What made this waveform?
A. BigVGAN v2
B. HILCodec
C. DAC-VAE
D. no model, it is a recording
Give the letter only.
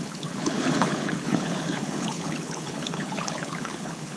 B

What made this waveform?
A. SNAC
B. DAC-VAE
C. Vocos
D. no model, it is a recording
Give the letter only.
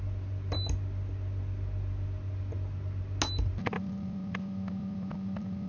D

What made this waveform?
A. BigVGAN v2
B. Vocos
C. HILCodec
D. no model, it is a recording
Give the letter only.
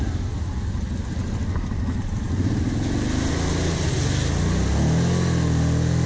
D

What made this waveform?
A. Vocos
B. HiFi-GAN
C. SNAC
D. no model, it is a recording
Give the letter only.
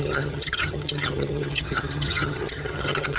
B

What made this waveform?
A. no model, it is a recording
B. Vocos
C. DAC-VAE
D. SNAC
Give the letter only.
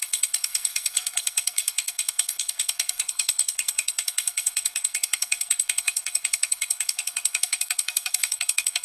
D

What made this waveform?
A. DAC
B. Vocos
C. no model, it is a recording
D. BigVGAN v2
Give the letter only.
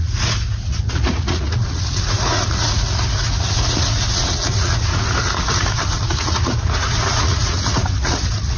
B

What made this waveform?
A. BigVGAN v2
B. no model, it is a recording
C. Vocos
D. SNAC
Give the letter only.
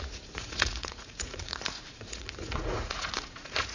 C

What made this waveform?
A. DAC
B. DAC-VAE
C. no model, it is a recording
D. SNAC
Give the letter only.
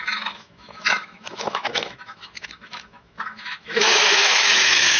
B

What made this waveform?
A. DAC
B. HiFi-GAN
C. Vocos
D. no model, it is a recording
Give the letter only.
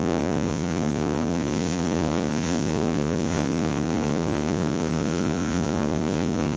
C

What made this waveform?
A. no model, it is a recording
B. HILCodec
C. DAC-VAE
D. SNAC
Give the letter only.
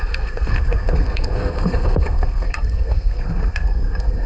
D